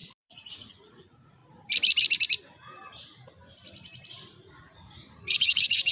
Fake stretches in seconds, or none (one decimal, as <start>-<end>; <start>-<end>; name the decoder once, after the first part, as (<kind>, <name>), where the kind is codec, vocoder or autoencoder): 0.0-1.4 (vocoder, Vocos); 4.1-5.9